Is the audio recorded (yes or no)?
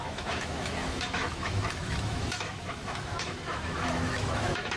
no